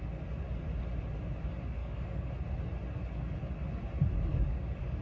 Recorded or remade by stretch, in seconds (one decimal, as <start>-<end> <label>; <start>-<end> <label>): 0.0-1.8 recorded; 1.8-2.3 remade; 2.3-4.3 recorded; 4.3-5.0 remade